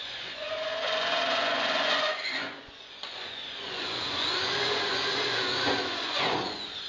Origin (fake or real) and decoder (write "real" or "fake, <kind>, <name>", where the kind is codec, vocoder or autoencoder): fake, vocoder, Vocos